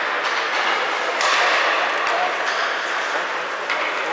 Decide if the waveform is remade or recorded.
recorded